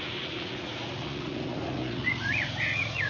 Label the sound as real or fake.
fake